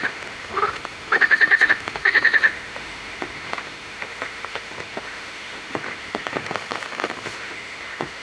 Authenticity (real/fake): fake